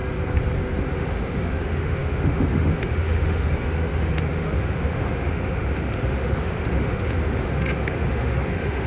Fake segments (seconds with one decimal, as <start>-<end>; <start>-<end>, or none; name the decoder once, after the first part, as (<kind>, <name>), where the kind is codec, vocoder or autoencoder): 0.9-8.9 (autoencoder, DAC-VAE)